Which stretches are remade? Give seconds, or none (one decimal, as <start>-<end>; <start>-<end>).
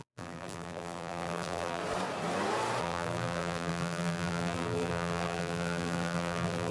0.0-1.8; 2.8-6.7